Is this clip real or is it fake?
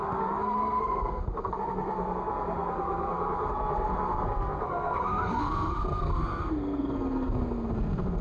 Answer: fake